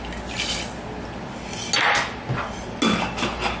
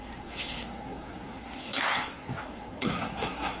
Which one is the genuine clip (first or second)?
first